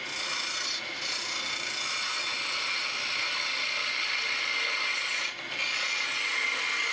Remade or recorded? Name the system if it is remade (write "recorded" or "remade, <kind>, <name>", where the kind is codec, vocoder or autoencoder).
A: recorded